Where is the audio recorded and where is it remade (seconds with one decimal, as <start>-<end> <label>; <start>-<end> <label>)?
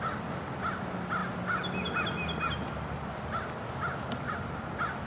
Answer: 0.0-5.1 recorded